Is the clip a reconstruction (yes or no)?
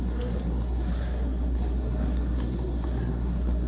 yes